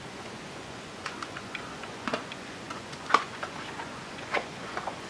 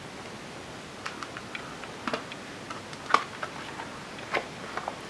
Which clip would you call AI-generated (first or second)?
first